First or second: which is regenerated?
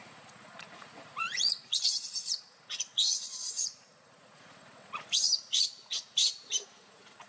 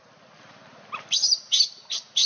first